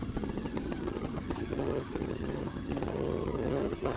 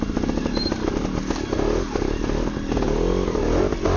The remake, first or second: first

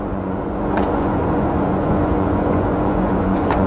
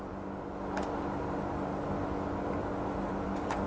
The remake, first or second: first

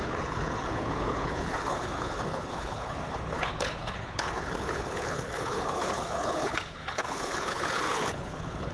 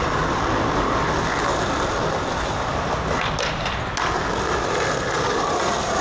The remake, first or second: first